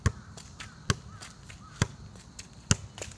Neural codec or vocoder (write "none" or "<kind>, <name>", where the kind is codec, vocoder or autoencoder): none